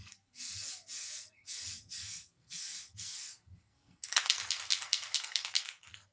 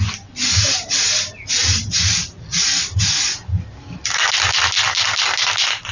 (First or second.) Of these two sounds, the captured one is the second